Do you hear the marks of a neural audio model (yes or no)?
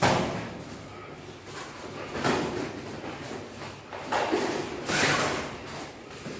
no